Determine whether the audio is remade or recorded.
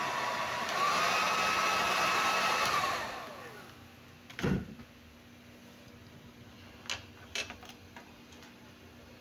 recorded